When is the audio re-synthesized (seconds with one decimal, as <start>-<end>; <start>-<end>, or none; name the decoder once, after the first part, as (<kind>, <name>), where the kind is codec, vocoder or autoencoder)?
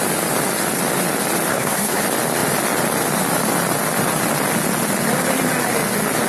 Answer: 1.5-2.0 (codec, SNAC)